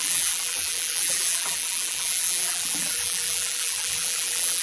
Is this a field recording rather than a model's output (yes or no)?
no